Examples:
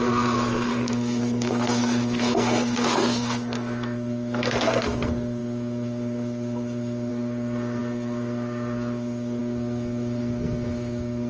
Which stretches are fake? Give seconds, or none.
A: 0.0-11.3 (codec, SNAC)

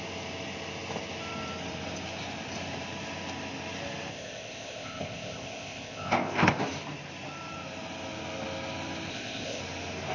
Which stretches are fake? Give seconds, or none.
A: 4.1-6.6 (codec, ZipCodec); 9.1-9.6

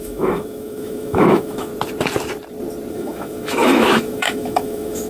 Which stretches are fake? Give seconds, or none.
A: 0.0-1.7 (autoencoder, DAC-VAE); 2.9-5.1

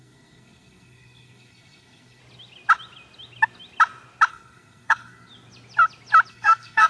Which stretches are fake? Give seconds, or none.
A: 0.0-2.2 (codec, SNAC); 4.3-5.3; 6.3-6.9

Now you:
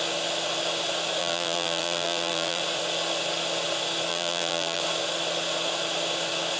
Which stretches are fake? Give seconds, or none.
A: 1.2-2.6 (vocoder, BigVGAN v2); 4.1-4.8

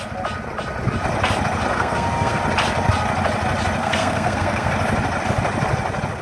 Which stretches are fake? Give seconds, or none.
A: 1.7-2.4 (codec, SNAC); 3.8-4.7

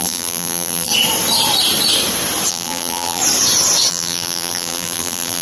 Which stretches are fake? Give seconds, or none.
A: 0.0-0.9 (vocoder, BigVGAN v2); 2.5-3.2; 3.9-5.4

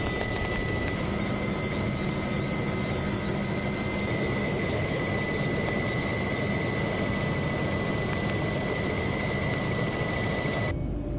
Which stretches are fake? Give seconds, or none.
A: 4.4-5.0 (codec, HILCodec)